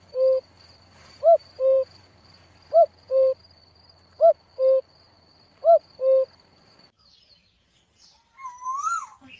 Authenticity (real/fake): fake